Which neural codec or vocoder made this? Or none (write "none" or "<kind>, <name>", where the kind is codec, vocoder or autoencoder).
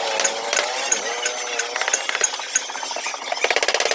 none